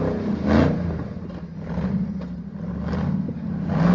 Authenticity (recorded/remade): recorded